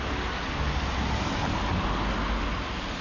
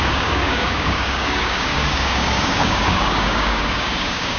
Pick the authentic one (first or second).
first